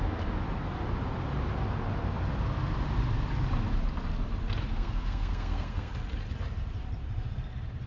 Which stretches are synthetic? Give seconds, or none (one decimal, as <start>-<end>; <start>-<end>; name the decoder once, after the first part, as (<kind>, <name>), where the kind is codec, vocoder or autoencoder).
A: 4.7-5.9 (codec, SNAC)